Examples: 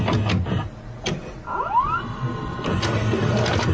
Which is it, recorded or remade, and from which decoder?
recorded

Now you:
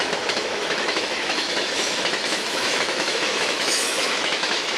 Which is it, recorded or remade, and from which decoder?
remade, autoencoder, DAC-VAE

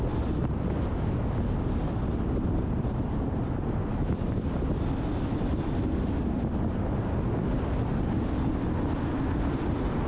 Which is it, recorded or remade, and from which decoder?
recorded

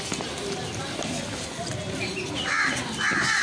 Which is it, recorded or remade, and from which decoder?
recorded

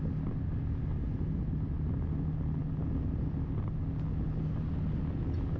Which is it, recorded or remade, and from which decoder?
recorded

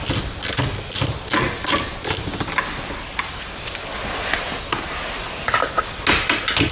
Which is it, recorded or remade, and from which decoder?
recorded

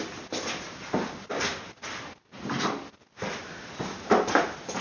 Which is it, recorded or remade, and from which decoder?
recorded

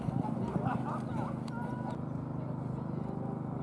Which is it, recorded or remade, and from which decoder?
recorded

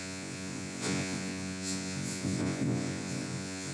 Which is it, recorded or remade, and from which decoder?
remade, vocoder, Vocos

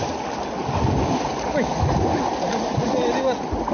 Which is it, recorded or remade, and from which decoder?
recorded